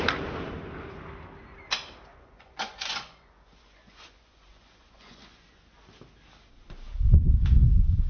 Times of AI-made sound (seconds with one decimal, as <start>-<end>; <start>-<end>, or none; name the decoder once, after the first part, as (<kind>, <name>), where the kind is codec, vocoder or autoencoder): 2.1-5.6 (vocoder, Vocos)